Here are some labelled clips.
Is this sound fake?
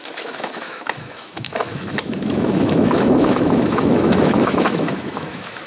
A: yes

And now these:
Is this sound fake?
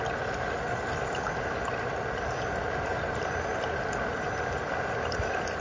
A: no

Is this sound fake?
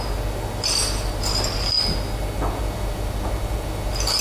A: no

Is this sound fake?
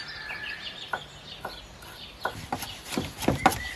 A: no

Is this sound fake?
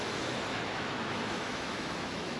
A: yes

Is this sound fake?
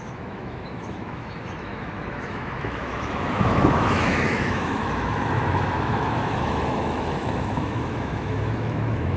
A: yes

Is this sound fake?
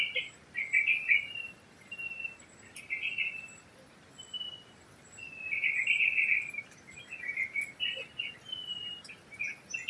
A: no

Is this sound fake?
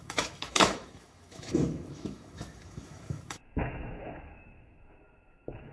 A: yes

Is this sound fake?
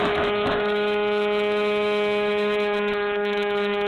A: yes